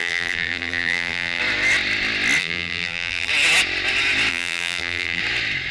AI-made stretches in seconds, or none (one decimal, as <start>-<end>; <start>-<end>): 0.0-1.4; 2.4-3.3; 4.3-5.2